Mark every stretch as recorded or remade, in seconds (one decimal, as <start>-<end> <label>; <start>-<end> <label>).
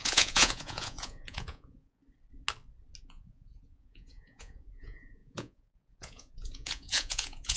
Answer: 0.0-2.0 remade; 2.0-3.0 recorded; 3.0-7.6 remade